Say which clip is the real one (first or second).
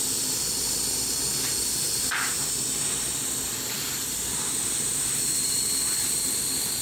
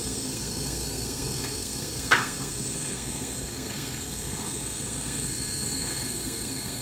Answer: first